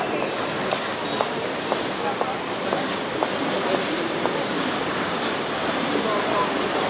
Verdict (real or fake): real